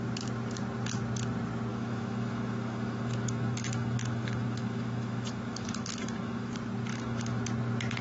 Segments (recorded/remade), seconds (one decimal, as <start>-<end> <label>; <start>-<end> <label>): 0.0-1.7 recorded; 1.7-6.5 remade; 6.5-6.9 recorded; 6.9-7.4 remade; 7.4-8.0 recorded